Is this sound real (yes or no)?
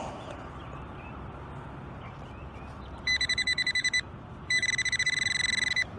no